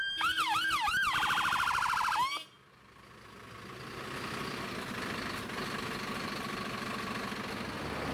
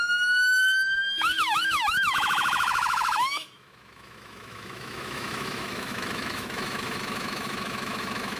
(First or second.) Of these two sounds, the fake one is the second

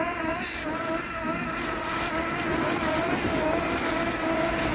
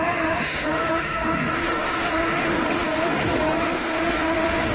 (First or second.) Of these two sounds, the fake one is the second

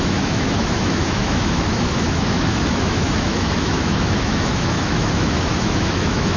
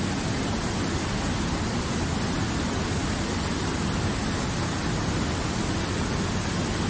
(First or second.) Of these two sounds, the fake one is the first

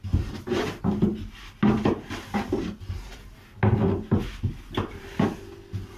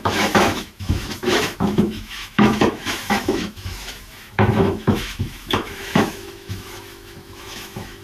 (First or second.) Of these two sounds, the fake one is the second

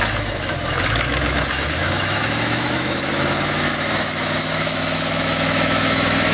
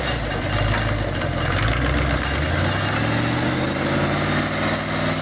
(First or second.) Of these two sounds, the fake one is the first